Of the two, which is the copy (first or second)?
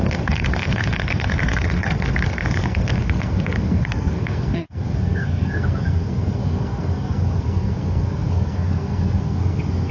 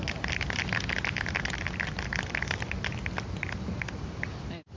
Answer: first